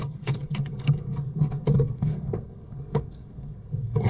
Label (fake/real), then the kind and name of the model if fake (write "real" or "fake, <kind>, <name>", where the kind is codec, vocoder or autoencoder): fake, codec, SNAC